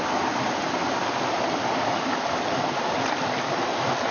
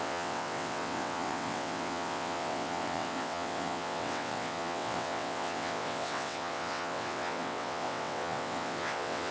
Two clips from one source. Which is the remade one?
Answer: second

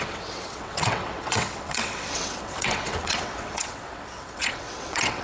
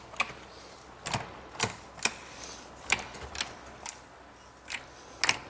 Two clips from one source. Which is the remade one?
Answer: first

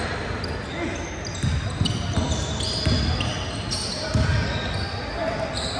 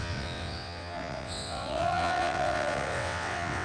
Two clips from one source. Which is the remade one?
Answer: second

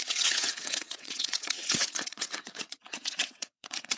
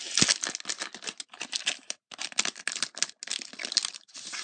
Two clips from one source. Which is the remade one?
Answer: first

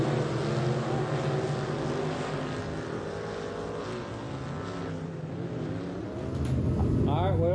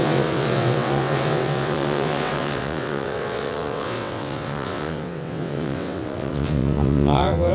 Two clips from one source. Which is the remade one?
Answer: second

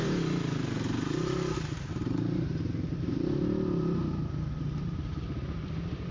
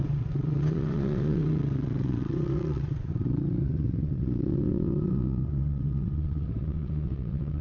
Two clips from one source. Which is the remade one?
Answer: second